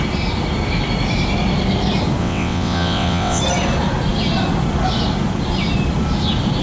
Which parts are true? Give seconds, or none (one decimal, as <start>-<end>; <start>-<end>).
0.0-2.2; 3.4-6.6